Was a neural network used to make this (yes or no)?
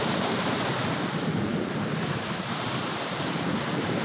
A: no